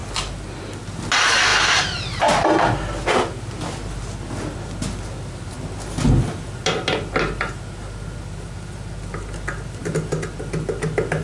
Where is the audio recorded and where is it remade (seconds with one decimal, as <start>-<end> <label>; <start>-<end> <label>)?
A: 0.0-11.2 recorded